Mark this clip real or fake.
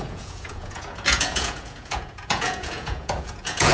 fake